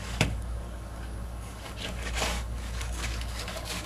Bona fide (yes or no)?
no